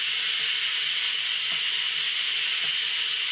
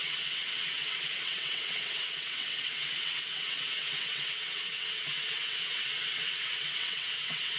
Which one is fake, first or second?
second